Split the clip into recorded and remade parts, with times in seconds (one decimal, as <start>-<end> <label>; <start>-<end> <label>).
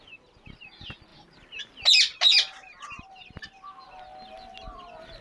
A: 0.0-5.2 recorded